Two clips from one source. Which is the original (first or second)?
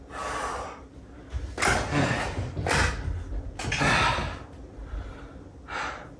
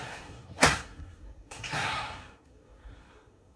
first